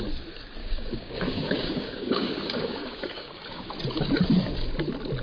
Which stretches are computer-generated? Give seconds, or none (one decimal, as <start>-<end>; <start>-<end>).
0.6-3.7